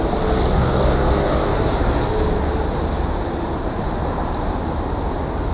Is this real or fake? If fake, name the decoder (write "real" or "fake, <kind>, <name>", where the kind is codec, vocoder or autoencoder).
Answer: real